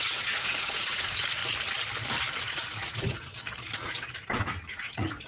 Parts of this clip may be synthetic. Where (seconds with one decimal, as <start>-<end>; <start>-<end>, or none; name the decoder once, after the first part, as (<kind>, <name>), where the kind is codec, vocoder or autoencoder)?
0.0-1.4 (vocoder, Vocos); 2.4-3.3; 4.7-5.3

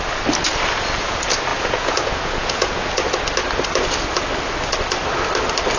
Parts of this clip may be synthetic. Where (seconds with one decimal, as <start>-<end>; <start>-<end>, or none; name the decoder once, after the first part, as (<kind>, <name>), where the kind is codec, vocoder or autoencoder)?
1.5-2.9 (vocoder, Vocos)

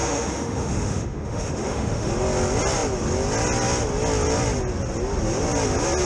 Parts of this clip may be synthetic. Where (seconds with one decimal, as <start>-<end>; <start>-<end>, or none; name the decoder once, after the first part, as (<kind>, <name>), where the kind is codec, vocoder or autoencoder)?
0.0-2.1 (autoencoder, DAC-VAE)

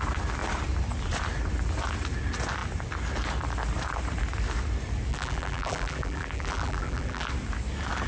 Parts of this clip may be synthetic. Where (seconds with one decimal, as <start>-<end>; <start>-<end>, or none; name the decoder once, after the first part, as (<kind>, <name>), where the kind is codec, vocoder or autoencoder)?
5.1-7.3 (vocoder, BigVGAN v2)

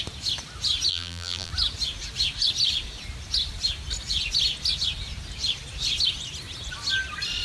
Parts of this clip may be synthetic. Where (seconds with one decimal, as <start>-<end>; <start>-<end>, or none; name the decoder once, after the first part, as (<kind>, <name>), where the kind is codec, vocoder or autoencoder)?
0.9-1.5 (vocoder, BigVGAN v2)

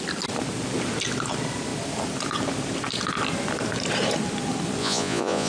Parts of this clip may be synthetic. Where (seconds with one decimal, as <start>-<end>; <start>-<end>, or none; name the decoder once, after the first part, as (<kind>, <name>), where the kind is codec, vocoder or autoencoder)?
4.8-5.5 (vocoder, Vocos)

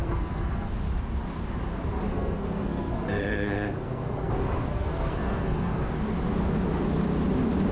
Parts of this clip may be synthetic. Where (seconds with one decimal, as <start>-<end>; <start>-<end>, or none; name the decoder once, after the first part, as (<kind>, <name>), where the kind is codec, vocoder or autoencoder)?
0.0-0.7 (codec, SNAC); 2.1-4.3; 4.7-5.9